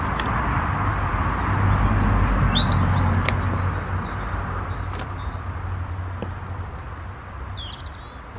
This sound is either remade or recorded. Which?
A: recorded